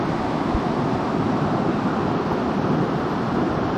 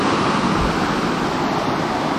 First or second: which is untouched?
first